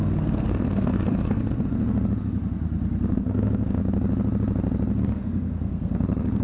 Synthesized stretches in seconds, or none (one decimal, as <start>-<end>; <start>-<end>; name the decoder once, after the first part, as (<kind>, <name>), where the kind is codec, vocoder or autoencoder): 0.0-1.0 (codec, SNAC); 3.1-3.8; 5.0-6.4